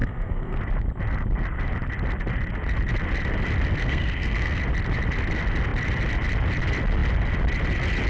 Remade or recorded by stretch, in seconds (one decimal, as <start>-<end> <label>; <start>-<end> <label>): 0.0-0.6 remade; 0.6-3.8 recorded; 3.8-4.6 remade; 4.6-8.1 recorded